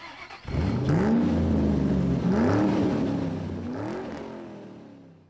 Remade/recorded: recorded